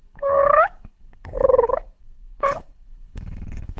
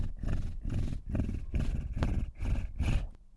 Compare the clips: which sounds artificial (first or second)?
first